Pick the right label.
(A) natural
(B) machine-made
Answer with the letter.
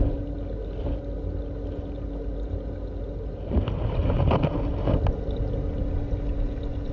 A